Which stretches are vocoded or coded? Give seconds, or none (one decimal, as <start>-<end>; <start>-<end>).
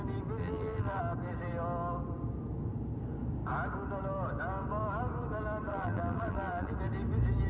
0.4-1.0; 5.7-6.7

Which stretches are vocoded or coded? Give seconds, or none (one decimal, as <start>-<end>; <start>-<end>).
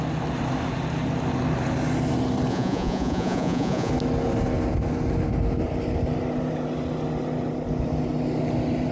2.5-3.9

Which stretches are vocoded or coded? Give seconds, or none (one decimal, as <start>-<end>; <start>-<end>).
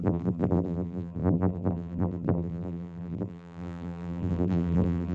0.0-5.1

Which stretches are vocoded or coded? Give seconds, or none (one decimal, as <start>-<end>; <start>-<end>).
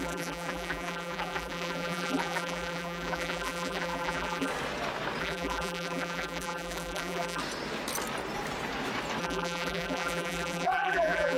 0.0-4.5; 5.2-7.4; 9.2-11.4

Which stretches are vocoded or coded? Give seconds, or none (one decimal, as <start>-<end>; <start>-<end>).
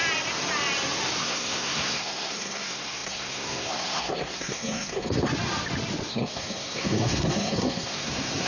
1.2-5.3; 6.1-8.5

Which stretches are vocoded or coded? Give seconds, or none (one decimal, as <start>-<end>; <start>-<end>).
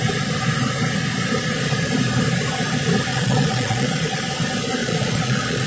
3.1-4.2; 4.8-5.7